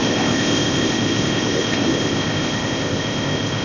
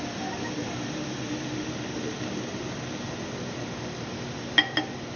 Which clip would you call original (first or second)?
second